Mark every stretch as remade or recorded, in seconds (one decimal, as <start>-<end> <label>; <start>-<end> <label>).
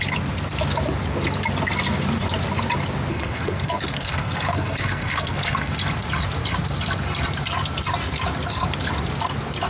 0.0-3.1 recorded; 3.1-5.7 remade; 5.7-9.7 recorded